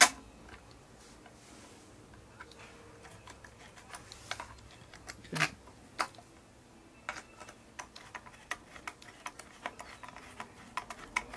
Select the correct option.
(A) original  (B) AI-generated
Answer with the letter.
A